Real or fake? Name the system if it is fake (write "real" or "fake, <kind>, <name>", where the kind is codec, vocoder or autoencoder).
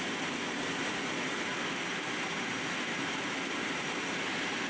real